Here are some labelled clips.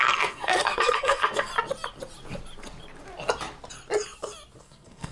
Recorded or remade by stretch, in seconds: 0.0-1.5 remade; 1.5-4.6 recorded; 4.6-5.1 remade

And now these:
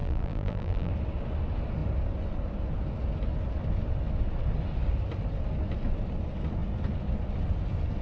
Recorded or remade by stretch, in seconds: 0.0-0.9 remade; 0.9-8.0 recorded

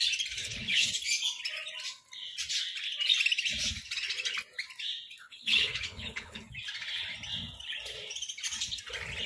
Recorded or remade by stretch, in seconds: 0.0-0.4 recorded; 0.4-0.9 remade; 0.9-5.2 recorded; 5.2-6.4 remade; 6.4-9.3 recorded

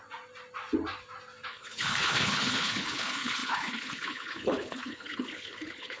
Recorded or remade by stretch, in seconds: 0.0-1.5 recorded; 1.5-6.0 remade

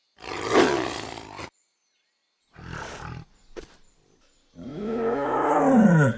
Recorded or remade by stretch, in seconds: 0.0-4.7 recorded; 4.7-5.6 remade; 5.6-6.2 recorded